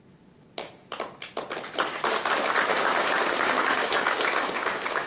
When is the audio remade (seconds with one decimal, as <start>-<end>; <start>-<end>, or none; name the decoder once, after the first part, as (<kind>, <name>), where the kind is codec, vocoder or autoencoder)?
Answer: 2.7-5.1 (codec, DAC)